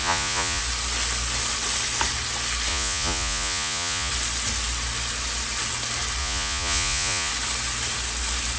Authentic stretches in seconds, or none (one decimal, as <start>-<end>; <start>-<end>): 0.6-2.7; 4.1-6.2; 7.3-8.6